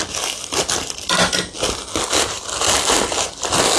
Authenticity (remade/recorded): recorded